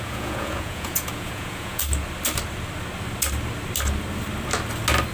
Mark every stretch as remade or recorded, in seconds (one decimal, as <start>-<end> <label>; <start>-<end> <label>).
0.0-1.8 remade; 1.8-5.1 recorded